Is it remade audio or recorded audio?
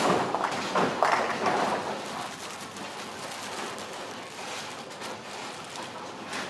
recorded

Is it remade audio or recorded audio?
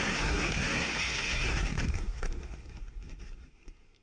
remade